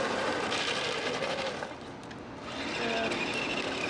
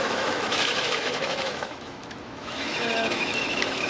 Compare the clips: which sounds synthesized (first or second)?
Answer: second